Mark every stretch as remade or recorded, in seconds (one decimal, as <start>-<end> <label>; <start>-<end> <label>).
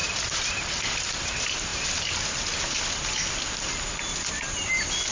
0.0-5.1 recorded